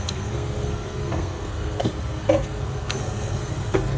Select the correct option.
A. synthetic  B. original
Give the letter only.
A